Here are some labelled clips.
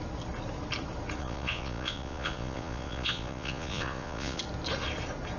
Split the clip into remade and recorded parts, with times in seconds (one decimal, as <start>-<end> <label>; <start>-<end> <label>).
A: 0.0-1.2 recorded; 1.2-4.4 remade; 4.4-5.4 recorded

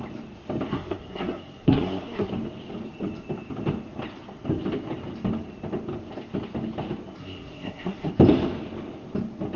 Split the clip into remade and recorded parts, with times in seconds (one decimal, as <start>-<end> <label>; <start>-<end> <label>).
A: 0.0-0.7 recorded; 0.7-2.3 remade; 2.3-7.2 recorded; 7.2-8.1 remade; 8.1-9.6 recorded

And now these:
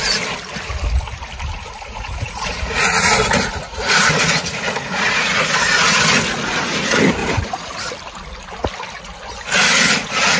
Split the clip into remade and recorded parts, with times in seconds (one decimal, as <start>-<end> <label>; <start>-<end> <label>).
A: 0.0-1.9 recorded; 1.9-6.0 remade; 6.0-7.2 recorded; 7.2-7.9 remade; 7.9-9.7 recorded; 9.7-10.4 remade